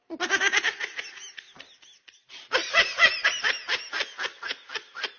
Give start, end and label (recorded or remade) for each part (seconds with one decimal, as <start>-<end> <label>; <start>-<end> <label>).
0.0-2.2 recorded; 2.2-3.4 remade; 3.4-5.2 recorded